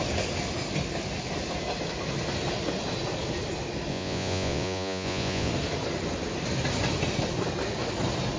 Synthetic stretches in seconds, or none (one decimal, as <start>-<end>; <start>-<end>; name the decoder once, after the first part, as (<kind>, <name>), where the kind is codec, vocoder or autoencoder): 3.9-5.5 (vocoder, Vocos)